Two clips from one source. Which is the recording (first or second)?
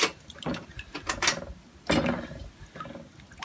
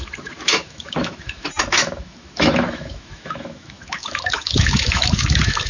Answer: first